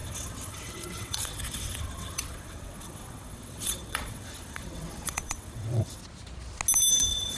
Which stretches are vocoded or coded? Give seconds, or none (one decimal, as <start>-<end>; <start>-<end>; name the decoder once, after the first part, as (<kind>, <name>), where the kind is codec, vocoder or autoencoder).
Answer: 0.0-6.0 (vocoder, WaveNeXt); 6.9-7.4